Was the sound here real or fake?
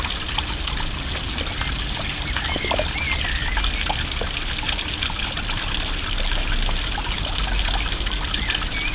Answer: real